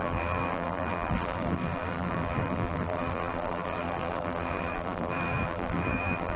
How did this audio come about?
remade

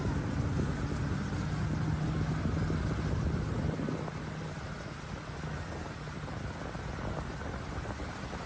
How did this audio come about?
recorded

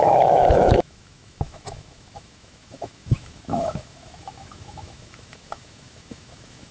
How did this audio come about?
remade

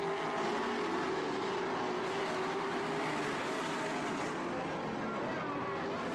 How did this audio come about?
recorded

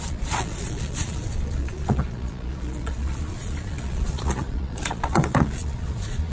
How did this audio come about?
remade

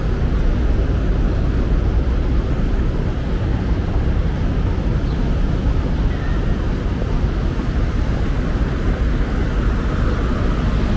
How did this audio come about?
recorded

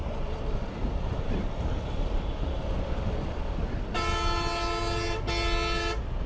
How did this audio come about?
recorded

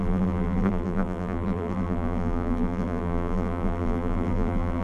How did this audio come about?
remade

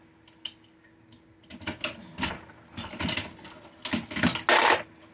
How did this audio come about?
recorded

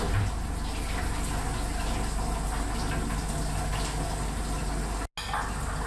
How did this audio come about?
recorded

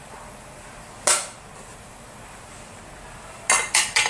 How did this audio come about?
recorded